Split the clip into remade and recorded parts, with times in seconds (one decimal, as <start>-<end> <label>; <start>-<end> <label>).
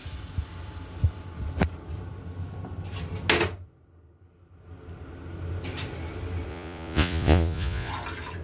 0.0-6.5 recorded; 6.5-7.9 remade; 7.9-8.4 recorded